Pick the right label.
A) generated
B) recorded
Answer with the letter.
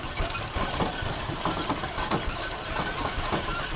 A